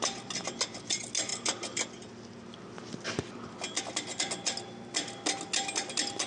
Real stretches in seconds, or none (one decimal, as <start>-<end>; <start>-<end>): 0.0-6.3